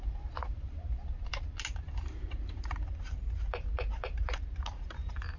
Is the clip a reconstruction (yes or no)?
yes